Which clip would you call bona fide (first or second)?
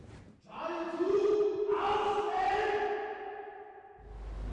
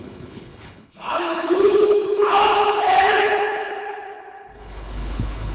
first